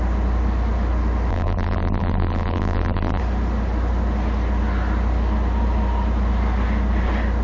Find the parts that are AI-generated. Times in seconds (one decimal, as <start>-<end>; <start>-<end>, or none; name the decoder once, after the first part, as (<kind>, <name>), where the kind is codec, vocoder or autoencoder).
1.3-3.2 (vocoder, BigVGAN v2)